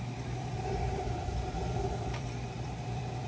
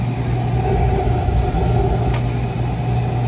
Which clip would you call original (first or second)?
second